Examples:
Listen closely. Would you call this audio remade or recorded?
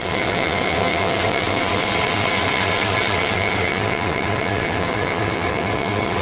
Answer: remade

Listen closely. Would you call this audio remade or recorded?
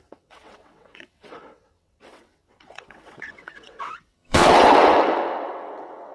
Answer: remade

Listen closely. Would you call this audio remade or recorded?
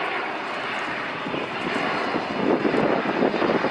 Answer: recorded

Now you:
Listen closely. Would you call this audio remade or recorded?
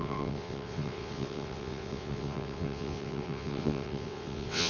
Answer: remade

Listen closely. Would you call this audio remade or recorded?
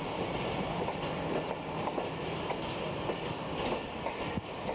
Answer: recorded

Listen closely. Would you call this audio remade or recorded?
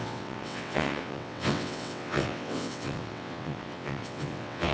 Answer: remade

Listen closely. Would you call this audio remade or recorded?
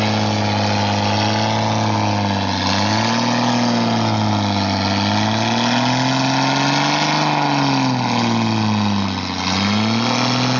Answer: recorded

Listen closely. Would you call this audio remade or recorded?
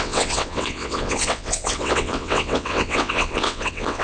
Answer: remade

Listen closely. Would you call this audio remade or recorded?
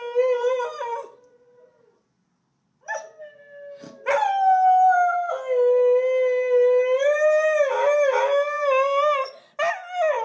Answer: recorded